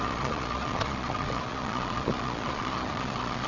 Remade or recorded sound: remade